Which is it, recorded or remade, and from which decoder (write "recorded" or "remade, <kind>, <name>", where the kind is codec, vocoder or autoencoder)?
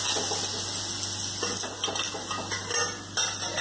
recorded